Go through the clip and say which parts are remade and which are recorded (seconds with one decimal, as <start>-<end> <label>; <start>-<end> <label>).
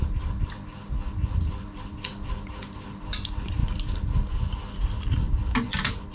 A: 0.0-6.1 recorded